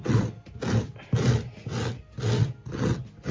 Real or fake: real